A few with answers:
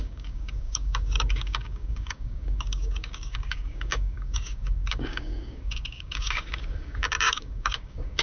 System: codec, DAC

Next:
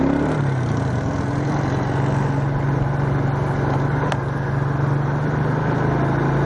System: none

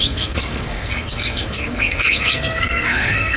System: codec, SNAC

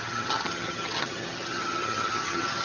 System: vocoder, HiFi-GAN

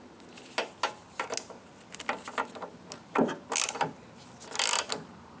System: none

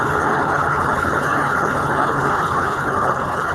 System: codec, HILCodec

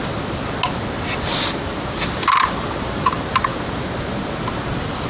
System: none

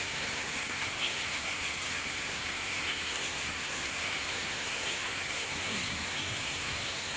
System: codec, SNAC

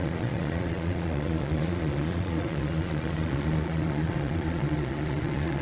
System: vocoder, Vocos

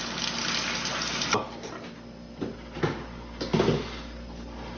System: none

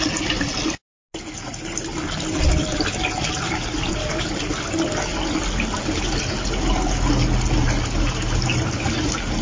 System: none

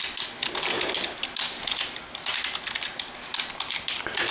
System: none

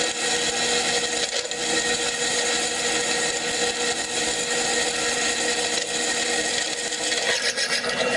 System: none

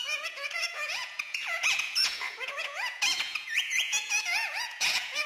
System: vocoder, Vocos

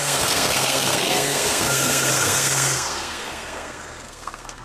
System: codec, SNAC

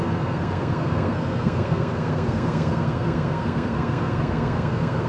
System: codec, SNAC